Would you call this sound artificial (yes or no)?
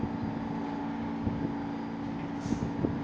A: no